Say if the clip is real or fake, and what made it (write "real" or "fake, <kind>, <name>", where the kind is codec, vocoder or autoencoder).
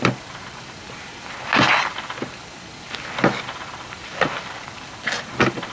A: real